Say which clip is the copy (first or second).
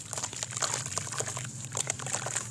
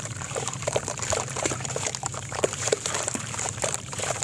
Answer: second